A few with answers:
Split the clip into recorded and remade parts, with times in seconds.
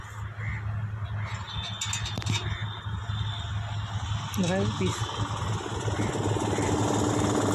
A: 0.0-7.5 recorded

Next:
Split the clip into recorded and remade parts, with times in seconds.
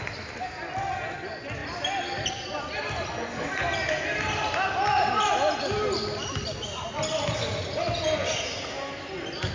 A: 0.0-9.5 recorded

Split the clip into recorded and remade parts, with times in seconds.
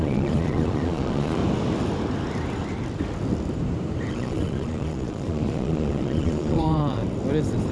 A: 0.0-1.4 remade; 1.4-4.1 recorded; 4.1-7.0 remade; 7.0-7.7 recorded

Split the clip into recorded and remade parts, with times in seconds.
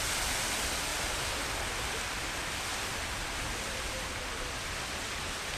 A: 0.0-5.6 recorded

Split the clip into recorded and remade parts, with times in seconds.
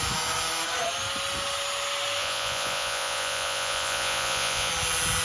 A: 0.0-2.2 recorded; 2.2-4.7 remade; 4.7-5.2 recorded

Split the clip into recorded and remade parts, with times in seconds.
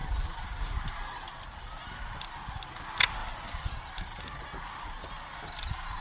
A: 0.0-6.0 recorded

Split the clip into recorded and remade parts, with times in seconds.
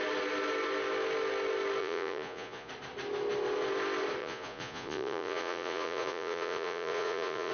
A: 0.0-1.8 recorded; 1.8-2.7 remade; 2.7-4.2 recorded; 4.2-7.5 remade